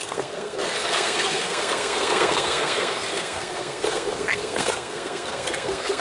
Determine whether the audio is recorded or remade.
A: remade